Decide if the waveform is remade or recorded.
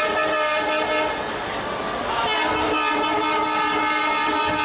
recorded